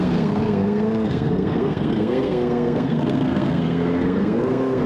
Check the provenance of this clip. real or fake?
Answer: fake